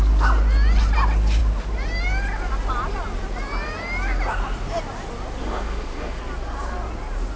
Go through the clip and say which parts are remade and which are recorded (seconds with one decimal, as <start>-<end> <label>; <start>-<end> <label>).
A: 0.0-5.4 recorded; 5.4-6.2 remade; 6.2-7.4 recorded